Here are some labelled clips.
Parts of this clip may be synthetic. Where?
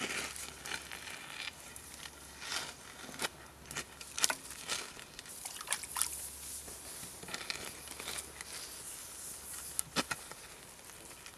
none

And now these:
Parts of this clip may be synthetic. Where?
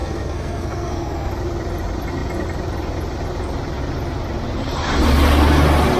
0.0-1.3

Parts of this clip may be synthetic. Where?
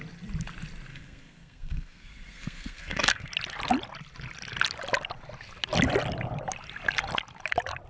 0.9-3.3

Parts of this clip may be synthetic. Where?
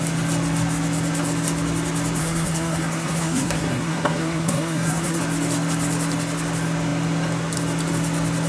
2.2-5.2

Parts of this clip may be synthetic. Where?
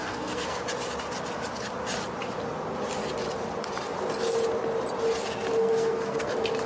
0.0-0.6; 5.6-6.3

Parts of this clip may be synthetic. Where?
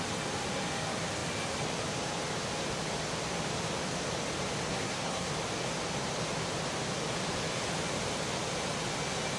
4.7-5.3